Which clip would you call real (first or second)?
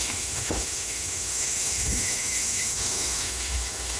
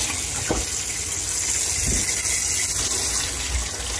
second